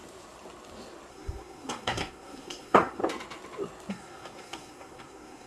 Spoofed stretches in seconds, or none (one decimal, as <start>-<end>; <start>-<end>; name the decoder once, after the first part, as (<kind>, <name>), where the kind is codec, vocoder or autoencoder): 1.1-3.0 (codec, SNAC); 3.9-5.5